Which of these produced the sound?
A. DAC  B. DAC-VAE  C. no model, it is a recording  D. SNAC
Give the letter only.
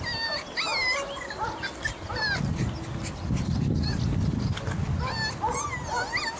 C